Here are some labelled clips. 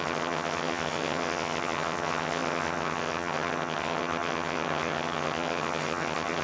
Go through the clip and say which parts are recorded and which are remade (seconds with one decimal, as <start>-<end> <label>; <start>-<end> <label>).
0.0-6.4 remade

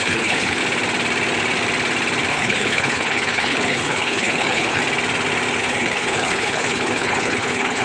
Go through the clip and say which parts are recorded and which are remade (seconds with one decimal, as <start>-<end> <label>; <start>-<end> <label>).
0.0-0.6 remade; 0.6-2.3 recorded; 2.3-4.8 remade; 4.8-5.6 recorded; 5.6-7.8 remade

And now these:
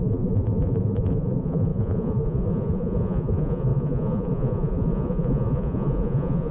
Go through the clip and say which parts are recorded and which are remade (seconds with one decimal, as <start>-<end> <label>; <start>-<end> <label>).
0.0-6.5 remade

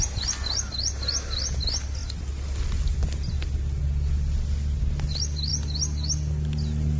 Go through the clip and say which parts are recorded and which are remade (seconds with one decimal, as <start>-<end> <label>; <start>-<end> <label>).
0.0-7.0 recorded

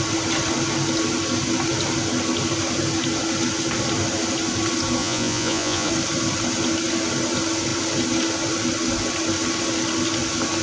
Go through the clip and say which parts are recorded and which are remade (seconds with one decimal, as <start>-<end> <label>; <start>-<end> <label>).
0.0-5.0 recorded; 5.0-5.9 remade; 5.9-10.6 recorded

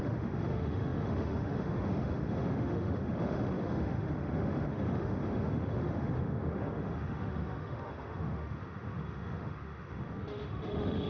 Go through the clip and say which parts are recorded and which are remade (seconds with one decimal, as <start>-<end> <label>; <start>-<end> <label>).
0.0-11.1 remade